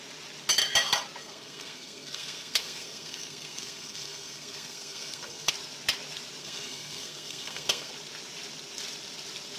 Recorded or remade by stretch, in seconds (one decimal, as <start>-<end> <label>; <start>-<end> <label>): 0.0-1.2 recorded; 1.2-5.5 remade; 5.5-6.4 recorded; 6.4-7.9 remade; 7.9-9.6 recorded